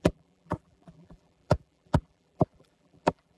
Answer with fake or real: fake